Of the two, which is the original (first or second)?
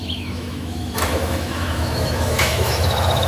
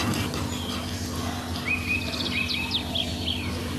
second